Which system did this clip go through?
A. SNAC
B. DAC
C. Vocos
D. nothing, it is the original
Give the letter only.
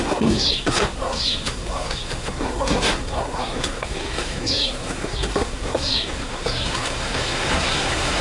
A